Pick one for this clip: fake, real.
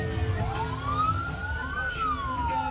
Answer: real